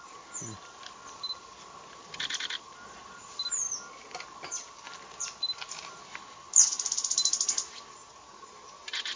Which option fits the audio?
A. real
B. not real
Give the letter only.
A